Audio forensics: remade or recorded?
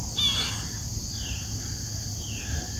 recorded